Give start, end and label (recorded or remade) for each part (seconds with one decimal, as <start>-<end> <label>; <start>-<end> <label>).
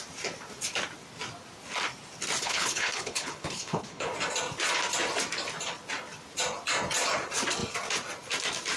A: 0.0-2.4 recorded; 2.4-4.1 remade; 4.1-8.8 recorded